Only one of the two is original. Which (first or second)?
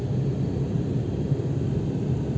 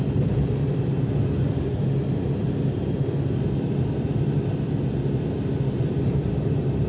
second